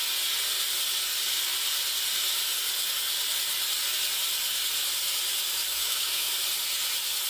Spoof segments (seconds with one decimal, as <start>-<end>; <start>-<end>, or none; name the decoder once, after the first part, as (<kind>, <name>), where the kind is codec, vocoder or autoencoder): 5.7-6.3 (autoencoder, DAC-VAE)